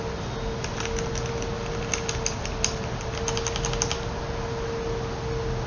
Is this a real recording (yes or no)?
yes